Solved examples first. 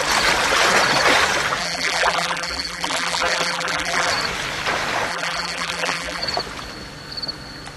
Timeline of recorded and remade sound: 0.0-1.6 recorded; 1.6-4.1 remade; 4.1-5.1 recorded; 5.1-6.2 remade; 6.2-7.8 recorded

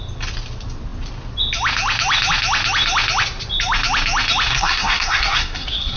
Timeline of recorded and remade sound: 0.0-4.5 recorded; 4.5-6.0 remade